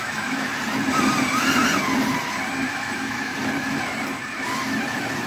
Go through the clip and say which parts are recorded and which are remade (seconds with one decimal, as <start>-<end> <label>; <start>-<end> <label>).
0.0-0.5 remade; 0.5-2.7 recorded; 2.7-3.3 remade; 3.3-5.3 recorded